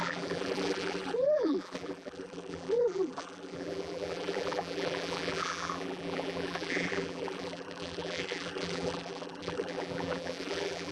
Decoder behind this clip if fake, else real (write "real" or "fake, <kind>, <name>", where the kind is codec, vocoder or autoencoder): fake, vocoder, BigVGAN v2